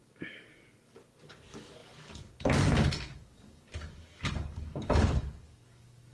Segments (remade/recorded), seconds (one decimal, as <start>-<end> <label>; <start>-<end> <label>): 0.0-6.1 remade